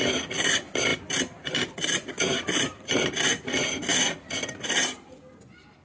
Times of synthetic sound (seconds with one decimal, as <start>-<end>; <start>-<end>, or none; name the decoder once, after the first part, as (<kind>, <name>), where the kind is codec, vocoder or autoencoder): none